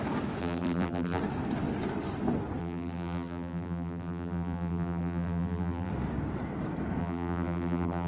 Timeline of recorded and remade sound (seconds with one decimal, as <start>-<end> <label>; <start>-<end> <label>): 0.0-0.4 recorded; 0.4-1.2 remade; 1.2-2.6 recorded; 2.6-5.9 remade; 5.9-7.0 recorded; 7.0-8.1 remade